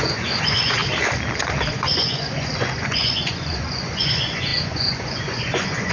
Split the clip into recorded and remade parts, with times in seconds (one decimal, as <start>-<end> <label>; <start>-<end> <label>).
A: 0.0-0.8 remade; 0.8-1.7 recorded; 1.7-5.9 remade